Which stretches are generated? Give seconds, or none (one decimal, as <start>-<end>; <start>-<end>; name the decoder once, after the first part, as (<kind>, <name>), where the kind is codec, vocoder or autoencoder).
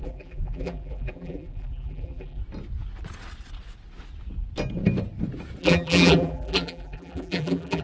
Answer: 0.0-2.4 (vocoder, BigVGAN v2); 5.6-7.8